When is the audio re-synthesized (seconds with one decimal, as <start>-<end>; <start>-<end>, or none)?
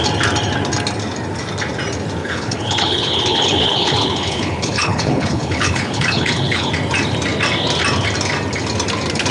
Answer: 2.2-6.7